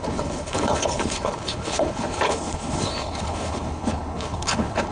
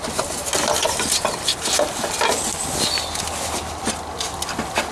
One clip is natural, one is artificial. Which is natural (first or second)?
second